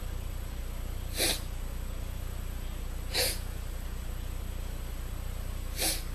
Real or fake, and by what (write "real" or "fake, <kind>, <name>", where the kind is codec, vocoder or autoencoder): real